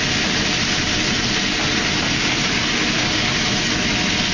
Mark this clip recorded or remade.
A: recorded